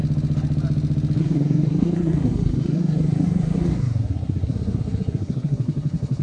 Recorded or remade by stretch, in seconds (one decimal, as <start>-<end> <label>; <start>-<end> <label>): 0.0-1.2 recorded; 1.2-6.2 remade